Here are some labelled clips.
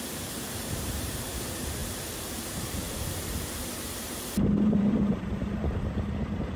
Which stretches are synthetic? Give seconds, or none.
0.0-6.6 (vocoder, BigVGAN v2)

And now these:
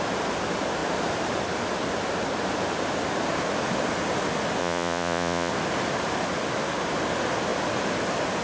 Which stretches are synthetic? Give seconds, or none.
4.6-5.5 (vocoder, Vocos)

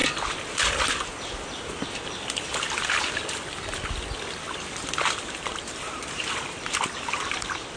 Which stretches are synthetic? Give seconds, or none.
none